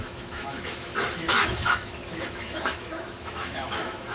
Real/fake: fake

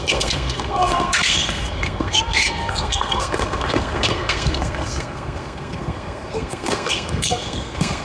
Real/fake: fake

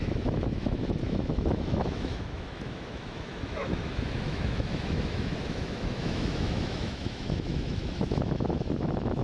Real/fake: fake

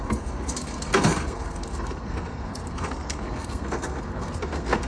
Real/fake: fake